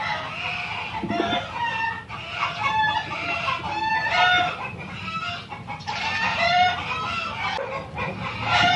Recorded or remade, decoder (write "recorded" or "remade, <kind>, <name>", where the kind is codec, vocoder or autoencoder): recorded